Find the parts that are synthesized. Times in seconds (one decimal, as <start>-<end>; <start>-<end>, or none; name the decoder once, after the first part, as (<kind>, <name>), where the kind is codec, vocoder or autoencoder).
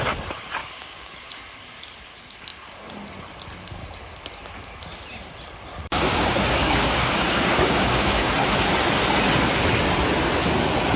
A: 0.6-1.3 (codec, DAC); 5.8-8.3